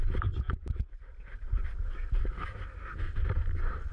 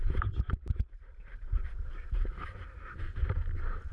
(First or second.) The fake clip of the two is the second